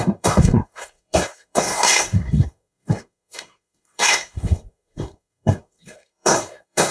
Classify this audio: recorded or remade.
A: remade